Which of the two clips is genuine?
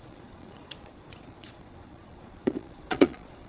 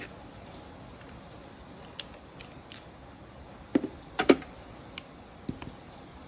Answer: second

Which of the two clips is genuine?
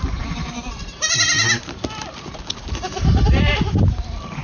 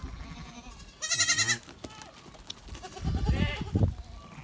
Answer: second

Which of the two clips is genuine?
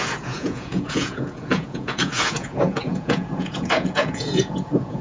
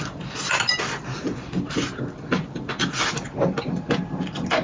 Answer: second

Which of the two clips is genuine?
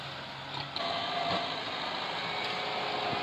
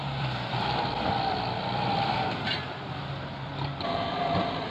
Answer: first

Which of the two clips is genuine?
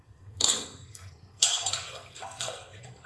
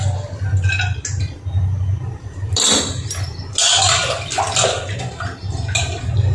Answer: second